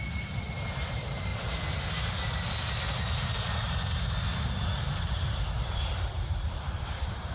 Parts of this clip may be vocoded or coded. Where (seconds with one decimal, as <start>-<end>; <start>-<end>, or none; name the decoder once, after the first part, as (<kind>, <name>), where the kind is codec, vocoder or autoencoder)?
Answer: 0.0-1.3 (vocoder, BigVGAN v2); 5.0-7.3